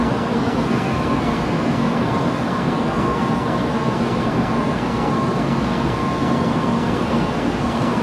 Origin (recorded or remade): remade